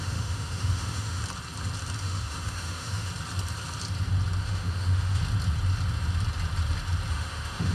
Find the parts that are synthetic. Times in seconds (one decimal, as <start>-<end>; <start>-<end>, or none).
0.0-1.2; 2.0-3.1; 4.4-5.2; 7.1-7.7